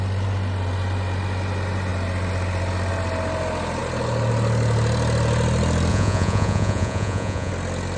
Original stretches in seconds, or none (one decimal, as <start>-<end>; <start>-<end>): 0.0-5.9; 7.5-8.0